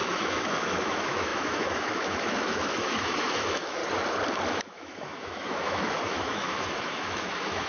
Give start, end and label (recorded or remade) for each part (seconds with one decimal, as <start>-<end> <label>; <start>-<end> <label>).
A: 0.0-3.8 remade; 3.8-4.5 recorded; 4.5-7.7 remade